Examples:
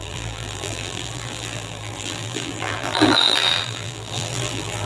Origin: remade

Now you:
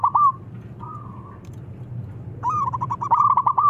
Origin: remade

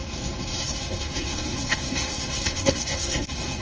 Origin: remade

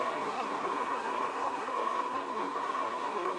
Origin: remade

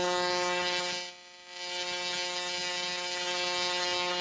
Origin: recorded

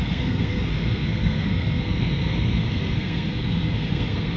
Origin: remade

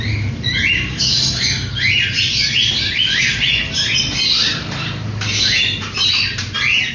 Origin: recorded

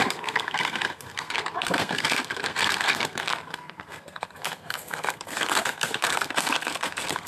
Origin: remade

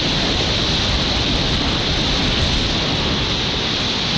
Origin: recorded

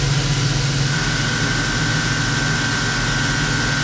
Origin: recorded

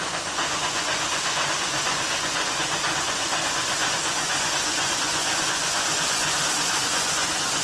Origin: remade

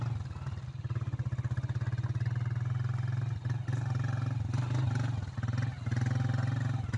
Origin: recorded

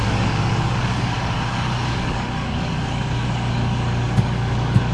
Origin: remade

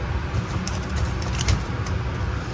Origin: recorded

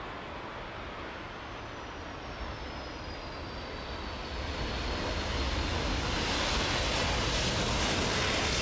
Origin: recorded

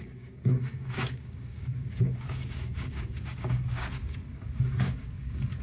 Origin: remade